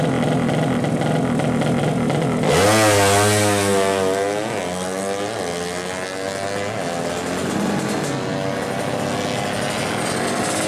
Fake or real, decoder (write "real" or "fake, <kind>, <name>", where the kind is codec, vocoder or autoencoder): real